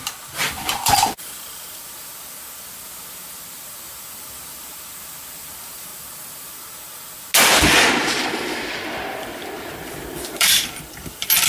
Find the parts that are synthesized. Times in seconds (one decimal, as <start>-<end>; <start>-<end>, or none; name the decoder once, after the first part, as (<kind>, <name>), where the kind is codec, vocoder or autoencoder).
0.0-5.9 (vocoder, BigVGAN v2); 7.9-11.5

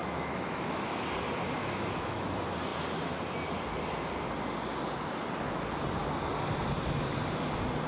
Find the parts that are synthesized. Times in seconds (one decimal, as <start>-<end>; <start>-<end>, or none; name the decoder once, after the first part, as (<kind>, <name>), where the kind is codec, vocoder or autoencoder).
0.0-1.0 (autoencoder, DAC-VAE); 1.6-2.3

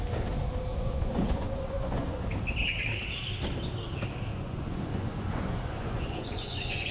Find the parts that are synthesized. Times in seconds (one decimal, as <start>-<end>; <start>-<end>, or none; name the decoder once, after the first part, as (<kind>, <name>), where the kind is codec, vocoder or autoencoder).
0.7-2.2 (vocoder, Vocos); 4.3-6.9

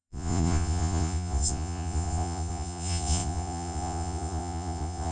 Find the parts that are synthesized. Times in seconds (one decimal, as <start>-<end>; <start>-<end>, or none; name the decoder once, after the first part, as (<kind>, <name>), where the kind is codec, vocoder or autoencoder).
0.0-5.1 (vocoder, Vocos)

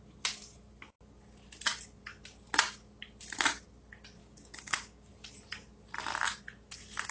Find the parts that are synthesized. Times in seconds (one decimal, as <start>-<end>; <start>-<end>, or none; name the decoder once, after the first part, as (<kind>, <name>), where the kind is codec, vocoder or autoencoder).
4.2-5.1 (codec, DAC)